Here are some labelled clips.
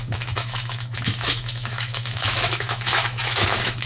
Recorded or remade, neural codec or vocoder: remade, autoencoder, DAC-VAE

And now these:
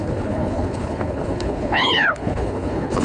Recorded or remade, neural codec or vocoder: remade, codec, HILCodec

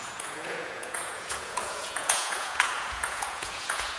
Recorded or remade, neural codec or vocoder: remade, vocoder, Vocos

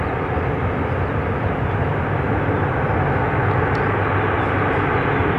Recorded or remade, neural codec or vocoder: recorded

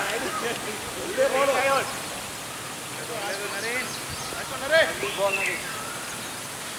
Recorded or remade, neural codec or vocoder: recorded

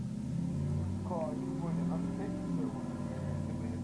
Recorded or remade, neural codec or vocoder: recorded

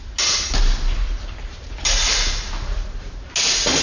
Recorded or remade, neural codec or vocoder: recorded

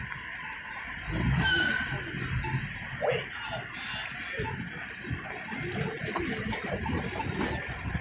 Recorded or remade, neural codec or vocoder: recorded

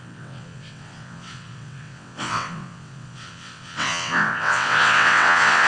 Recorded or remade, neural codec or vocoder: remade, vocoder, WaveNeXt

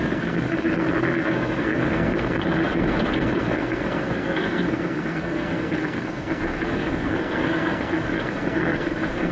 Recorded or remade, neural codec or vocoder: remade, codec, SNAC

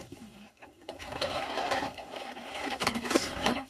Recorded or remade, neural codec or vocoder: remade, codec, SNAC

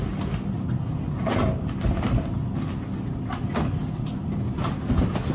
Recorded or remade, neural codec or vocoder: recorded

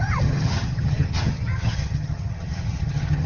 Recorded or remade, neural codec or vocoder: remade, vocoder, HiFi-GAN